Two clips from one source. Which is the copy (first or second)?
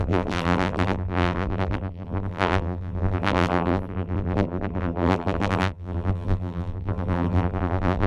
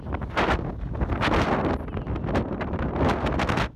first